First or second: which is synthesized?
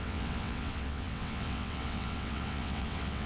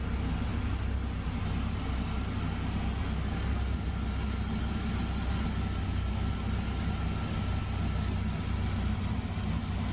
first